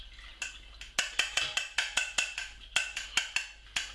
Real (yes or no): yes